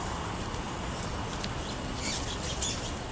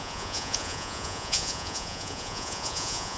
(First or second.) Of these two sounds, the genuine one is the first